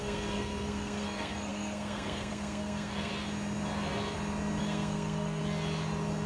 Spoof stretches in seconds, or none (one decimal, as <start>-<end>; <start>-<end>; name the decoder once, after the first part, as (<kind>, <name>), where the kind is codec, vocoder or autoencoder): 0.0-3.1 (codec, SNAC); 4.6-5.4